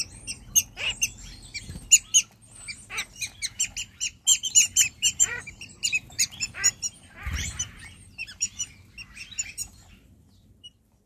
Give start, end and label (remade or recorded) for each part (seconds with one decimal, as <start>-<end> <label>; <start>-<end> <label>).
0.0-4.3 recorded; 4.3-8.6 remade; 8.6-11.1 recorded